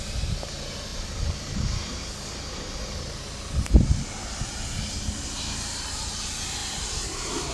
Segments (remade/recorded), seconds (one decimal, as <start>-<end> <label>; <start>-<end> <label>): 0.0-7.5 recorded